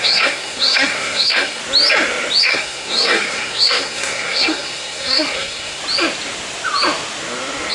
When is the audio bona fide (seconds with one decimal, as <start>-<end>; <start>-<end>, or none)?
1.6-2.4; 5.8-7.7

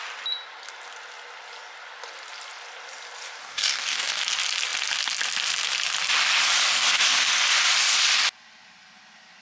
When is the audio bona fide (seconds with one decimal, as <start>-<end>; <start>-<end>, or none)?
0.0-3.4; 4.2-9.4